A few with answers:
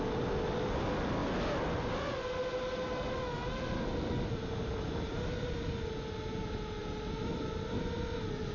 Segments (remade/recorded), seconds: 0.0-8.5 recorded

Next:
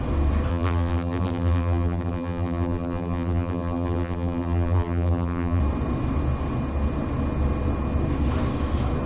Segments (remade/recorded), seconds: 0.0-0.5 recorded; 0.5-5.6 remade; 5.6-9.1 recorded

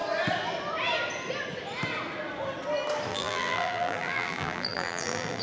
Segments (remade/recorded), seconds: 0.0-3.1 recorded; 3.1-5.4 remade

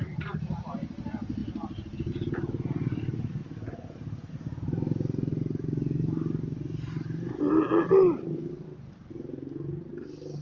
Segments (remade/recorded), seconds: 0.0-10.4 recorded

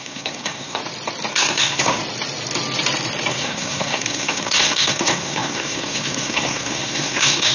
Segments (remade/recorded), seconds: 0.0-0.8 remade; 0.8-1.3 recorded; 1.3-2.0 remade; 2.0-3.3 recorded; 3.3-7.5 remade

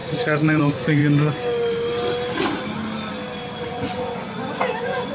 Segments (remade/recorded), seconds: 0.0-1.0 remade; 1.0-3.6 recorded; 3.6-5.1 remade

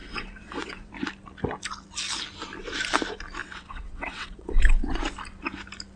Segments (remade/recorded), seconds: 0.0-0.9 remade; 0.9-3.4 recorded; 3.4-5.0 remade; 5.0-6.0 recorded